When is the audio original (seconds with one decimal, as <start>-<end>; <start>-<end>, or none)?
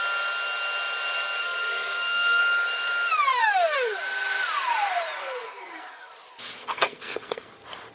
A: 0.0-1.4; 2.4-3.3; 4.0-5.2; 6.1-6.6; 7.5-7.9